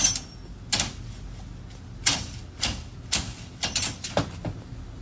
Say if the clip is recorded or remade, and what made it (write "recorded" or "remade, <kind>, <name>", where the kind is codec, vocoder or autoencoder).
recorded